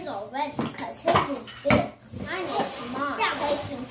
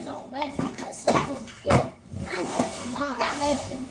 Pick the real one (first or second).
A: first